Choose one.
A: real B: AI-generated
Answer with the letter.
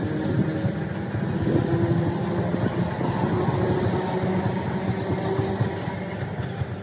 A